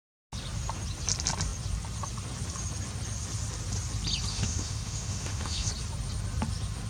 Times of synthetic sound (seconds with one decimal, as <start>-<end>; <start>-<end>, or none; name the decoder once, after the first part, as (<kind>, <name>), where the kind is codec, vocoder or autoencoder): 4.3-5.7 (autoencoder, DAC-VAE)